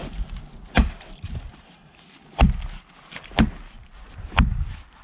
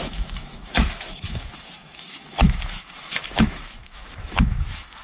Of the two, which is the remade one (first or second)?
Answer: second